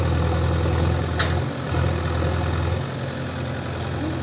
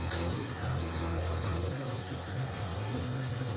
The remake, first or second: second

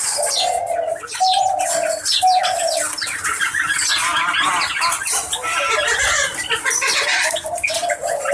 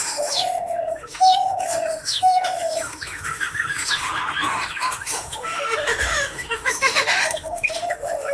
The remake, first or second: second